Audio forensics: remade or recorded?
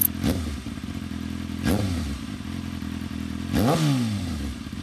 recorded